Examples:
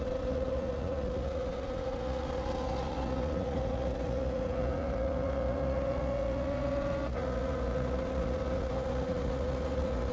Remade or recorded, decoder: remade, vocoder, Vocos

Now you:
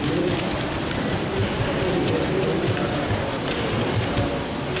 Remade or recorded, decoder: recorded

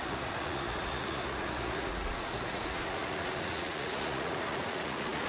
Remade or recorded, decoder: remade, vocoder, Vocos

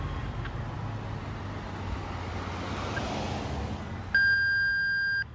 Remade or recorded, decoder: recorded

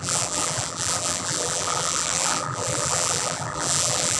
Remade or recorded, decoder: remade, vocoder, BigVGAN v2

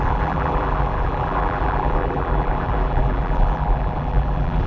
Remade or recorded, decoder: remade, vocoder, BigVGAN v2